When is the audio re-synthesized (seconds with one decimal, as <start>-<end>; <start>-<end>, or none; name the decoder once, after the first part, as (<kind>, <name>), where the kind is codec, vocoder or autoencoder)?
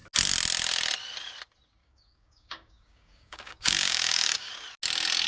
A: 1.8-4.5 (codec, DAC)